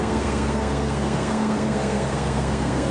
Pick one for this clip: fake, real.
fake